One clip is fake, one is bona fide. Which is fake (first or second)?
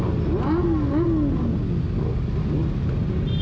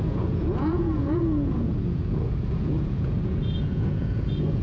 second